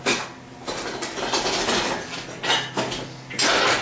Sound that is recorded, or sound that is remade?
recorded